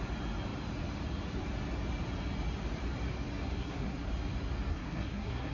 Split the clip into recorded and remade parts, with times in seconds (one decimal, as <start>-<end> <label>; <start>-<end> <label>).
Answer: 0.0-3.4 recorded; 3.4-4.1 remade; 4.1-4.7 recorded; 4.7-5.5 remade